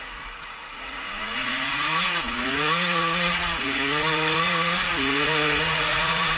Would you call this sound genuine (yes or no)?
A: no